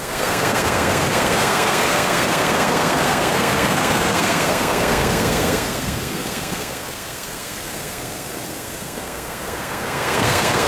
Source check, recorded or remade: remade